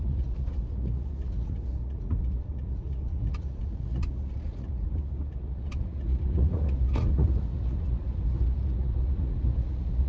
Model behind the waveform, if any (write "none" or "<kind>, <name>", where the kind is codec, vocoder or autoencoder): vocoder, Vocos